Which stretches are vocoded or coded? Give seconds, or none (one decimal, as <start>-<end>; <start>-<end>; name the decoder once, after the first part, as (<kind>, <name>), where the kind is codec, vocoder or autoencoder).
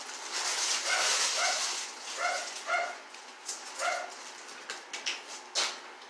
0.5-4.2 (vocoder, Vocos)